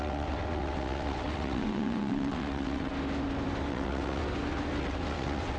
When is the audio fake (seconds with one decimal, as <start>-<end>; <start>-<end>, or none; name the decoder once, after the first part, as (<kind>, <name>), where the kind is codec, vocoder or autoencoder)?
0.0-2.9 (vocoder, WaveNeXt); 3.7-4.2; 4.8-5.6